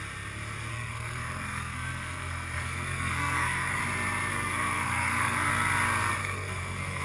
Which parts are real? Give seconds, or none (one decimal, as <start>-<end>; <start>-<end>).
0.0-0.7; 3.8-4.3; 5.5-6.2